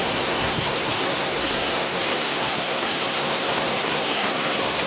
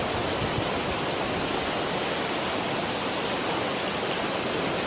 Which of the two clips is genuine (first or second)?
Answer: second